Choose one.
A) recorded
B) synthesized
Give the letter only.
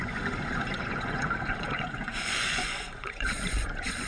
B